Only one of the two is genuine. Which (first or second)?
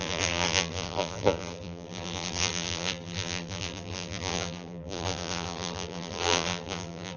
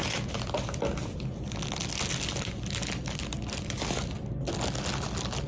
second